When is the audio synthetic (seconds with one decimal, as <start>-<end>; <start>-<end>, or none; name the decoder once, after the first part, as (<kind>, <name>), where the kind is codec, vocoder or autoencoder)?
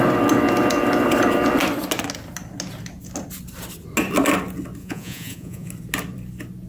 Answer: 4.8-5.7 (vocoder, Vocos)